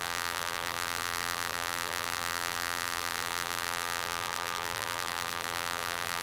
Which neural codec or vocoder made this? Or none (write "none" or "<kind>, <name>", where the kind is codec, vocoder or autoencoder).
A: vocoder, BigVGAN v2